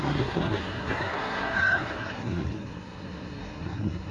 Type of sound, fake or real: fake